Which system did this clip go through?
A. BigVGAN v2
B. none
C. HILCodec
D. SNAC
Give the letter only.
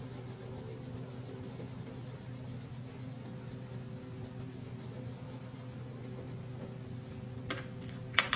B